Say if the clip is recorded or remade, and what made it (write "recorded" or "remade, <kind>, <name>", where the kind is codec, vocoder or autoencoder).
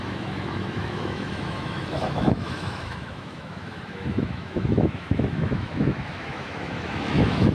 remade, autoencoder, DAC-VAE